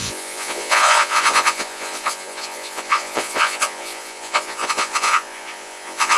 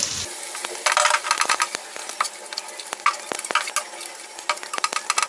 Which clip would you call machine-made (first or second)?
first